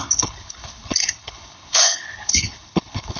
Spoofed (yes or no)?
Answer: yes